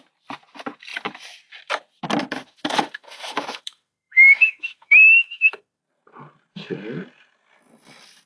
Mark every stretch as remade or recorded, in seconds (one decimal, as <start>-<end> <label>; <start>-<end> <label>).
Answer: 0.0-2.4 recorded; 2.4-5.8 remade; 5.8-8.3 recorded